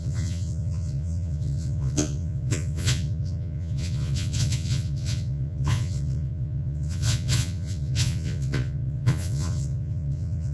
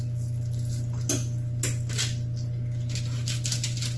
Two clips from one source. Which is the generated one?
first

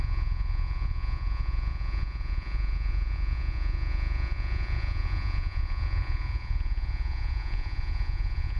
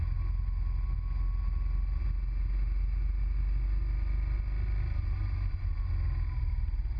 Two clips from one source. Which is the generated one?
first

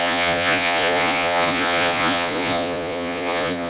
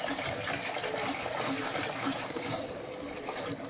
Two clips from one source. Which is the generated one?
first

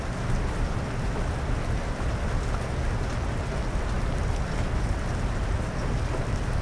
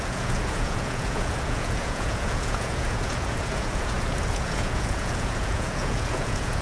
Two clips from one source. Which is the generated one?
second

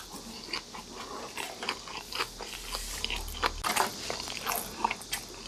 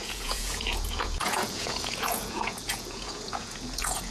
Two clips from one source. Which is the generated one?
second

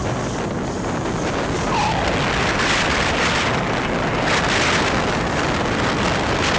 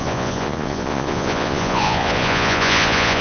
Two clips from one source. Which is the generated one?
second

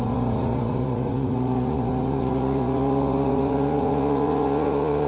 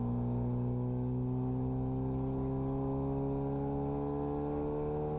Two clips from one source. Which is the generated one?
first